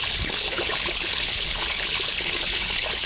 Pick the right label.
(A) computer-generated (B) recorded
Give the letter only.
A